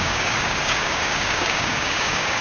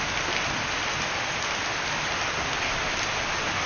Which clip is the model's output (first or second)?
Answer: first